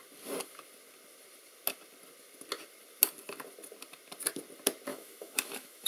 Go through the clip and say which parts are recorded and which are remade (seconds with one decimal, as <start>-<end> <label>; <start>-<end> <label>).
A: 0.0-4.9 recorded; 4.9-5.9 remade